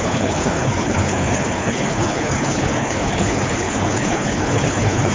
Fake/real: fake